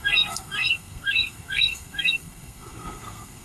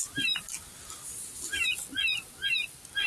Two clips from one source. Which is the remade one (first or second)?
first